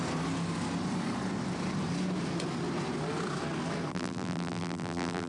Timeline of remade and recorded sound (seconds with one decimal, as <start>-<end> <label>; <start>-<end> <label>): 0.0-3.9 recorded; 3.9-5.3 remade